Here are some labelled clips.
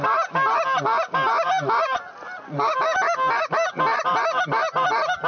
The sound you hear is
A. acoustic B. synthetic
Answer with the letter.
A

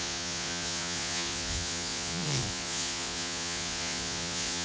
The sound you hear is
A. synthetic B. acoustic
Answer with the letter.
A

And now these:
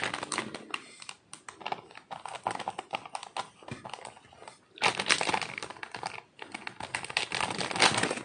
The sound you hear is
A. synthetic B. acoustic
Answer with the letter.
B